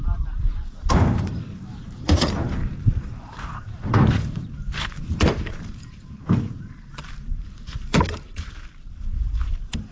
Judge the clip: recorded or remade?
remade